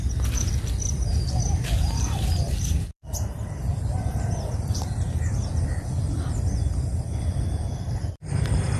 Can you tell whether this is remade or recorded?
remade